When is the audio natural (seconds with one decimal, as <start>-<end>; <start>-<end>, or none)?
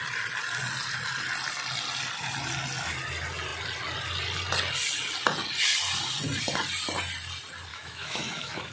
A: 0.0-7.7